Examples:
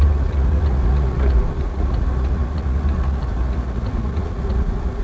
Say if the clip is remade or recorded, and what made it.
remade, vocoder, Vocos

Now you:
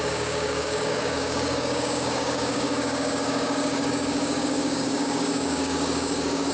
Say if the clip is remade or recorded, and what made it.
remade, codec, DAC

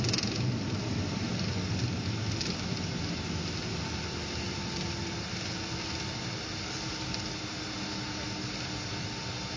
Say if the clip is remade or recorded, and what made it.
recorded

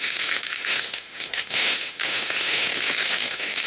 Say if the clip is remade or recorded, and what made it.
remade, autoencoder, DAC-VAE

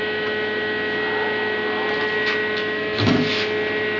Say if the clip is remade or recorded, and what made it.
recorded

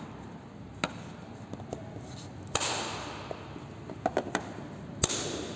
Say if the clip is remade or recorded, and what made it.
recorded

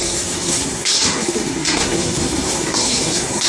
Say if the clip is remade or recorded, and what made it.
remade, codec, SNAC